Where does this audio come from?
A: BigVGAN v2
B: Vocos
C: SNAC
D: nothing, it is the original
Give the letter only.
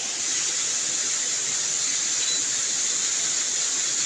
D